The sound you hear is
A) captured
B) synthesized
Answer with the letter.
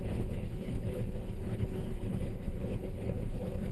B